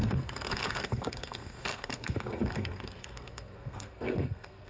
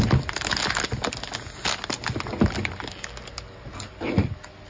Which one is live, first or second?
second